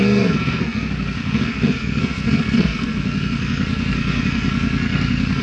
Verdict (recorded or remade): remade